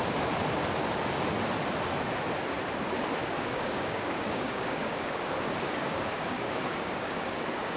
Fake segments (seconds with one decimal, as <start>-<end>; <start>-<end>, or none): 3.2-7.8